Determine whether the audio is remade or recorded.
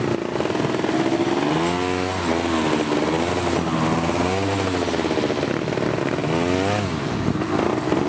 recorded